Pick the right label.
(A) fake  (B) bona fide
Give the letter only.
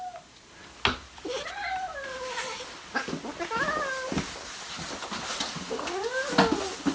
B